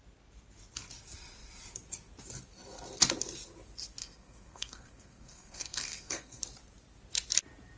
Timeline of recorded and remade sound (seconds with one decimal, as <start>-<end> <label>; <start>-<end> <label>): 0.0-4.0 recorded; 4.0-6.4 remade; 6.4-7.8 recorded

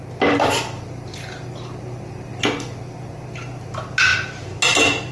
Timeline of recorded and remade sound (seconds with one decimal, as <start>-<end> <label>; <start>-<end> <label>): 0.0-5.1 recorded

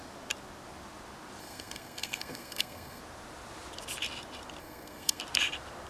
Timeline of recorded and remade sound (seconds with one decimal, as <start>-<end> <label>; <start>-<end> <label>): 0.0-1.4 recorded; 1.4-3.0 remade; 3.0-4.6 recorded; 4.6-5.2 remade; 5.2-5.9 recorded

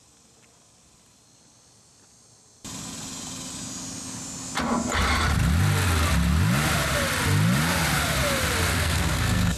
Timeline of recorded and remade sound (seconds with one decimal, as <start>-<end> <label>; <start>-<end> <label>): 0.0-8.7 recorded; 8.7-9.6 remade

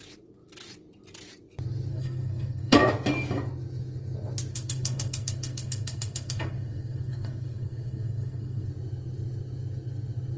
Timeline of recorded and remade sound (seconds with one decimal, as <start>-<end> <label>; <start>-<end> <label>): 0.0-1.9 recorded; 1.9-2.9 remade; 2.9-4.5 recorded; 4.5-8.7 remade; 8.7-10.4 recorded

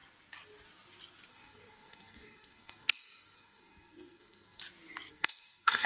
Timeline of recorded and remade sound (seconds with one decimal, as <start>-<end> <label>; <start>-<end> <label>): 0.0-1.3 recorded; 1.3-4.6 remade; 4.6-5.1 recorded; 5.1-5.9 remade

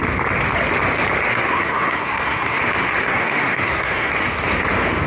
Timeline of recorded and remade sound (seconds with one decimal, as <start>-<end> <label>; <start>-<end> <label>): 0.0-1.3 recorded; 1.3-2.6 remade; 2.6-3.0 recorded; 3.0-4.1 remade; 4.1-5.1 recorded

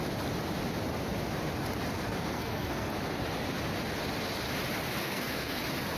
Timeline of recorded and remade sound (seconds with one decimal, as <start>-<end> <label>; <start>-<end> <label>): 0.0-1.9 recorded; 1.9-2.9 remade; 2.9-5.0 recorded; 5.0-5.6 remade; 5.6-6.0 recorded